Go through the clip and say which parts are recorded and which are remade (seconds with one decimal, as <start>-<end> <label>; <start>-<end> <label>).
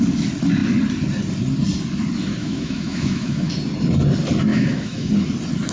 0.0-2.4 recorded; 2.4-3.5 remade; 3.5-4.5 recorded; 4.5-5.1 remade; 5.1-5.7 recorded